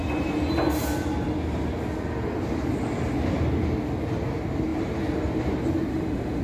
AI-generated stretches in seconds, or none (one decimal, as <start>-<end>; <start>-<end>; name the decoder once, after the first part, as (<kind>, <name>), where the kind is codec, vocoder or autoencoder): 5.9-6.4 (autoencoder, DAC-VAE)